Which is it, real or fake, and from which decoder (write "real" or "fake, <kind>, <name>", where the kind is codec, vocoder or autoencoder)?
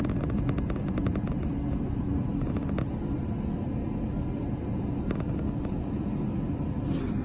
real